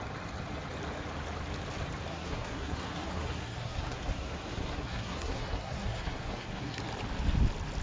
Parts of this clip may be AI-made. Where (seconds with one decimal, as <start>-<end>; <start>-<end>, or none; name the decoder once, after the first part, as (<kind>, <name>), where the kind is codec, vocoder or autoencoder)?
2.1-6.8 (codec, SNAC)